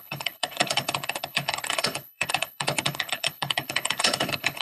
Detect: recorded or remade remade